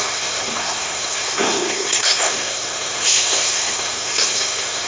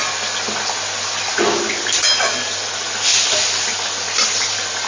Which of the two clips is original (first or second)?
second